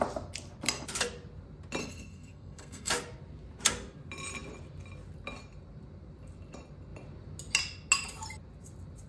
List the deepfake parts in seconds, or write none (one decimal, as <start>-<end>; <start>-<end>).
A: 1.8-2.9